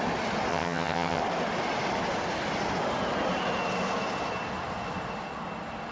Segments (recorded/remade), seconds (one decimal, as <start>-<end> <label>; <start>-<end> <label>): 0.0-0.5 recorded; 0.5-1.2 remade; 1.2-5.9 recorded